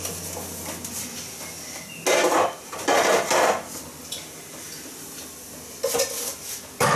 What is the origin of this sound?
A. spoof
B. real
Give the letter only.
B